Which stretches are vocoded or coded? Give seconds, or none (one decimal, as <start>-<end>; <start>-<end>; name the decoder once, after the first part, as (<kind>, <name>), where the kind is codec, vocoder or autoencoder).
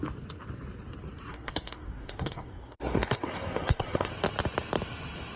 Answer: 1.3-4.1 (codec, SNAC)